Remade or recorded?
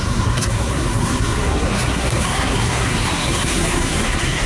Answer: remade